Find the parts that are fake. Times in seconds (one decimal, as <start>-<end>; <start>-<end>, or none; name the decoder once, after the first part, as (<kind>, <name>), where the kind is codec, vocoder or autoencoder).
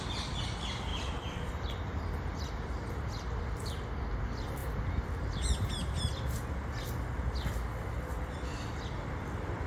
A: 0.9-2.9 (vocoder, BigVGAN v2)